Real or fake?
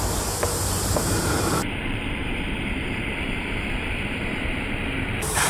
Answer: fake